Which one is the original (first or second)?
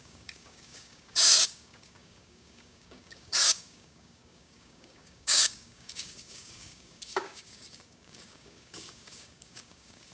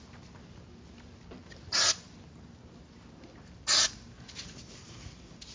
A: second